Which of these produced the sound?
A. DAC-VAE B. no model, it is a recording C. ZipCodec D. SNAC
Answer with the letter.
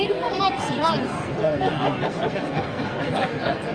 D